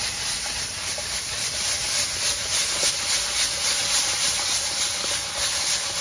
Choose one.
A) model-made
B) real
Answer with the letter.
B